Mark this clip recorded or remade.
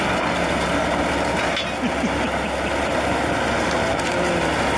recorded